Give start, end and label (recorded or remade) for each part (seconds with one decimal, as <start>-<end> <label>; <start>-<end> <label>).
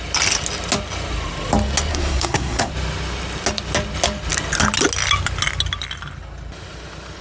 0.0-1.9 recorded; 1.9-2.7 remade; 2.7-7.2 recorded